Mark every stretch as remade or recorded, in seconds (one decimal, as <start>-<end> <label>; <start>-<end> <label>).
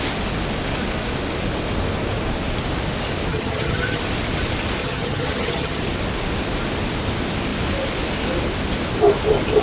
0.0-3.3 recorded; 3.3-4.0 remade; 4.0-4.8 recorded; 4.8-5.8 remade; 5.8-9.6 recorded